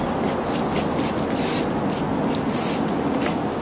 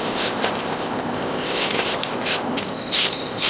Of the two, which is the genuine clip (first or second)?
first